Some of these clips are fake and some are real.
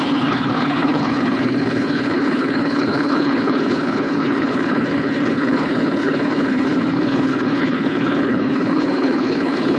fake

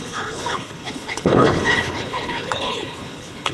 fake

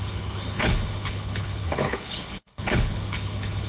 fake